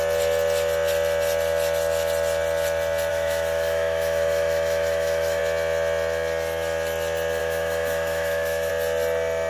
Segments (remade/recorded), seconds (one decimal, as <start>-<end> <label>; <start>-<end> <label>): 0.0-3.1 recorded; 3.1-5.4 remade; 5.4-7.4 recorded; 7.4-8.7 remade; 8.7-9.5 recorded